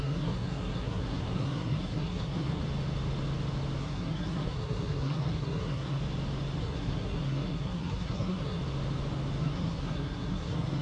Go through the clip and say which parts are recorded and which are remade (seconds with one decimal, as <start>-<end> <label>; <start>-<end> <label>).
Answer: 0.0-2.6 remade; 2.6-3.8 recorded; 3.8-6.0 remade; 6.0-6.6 recorded; 6.6-8.6 remade; 8.6-9.4 recorded; 9.4-10.8 remade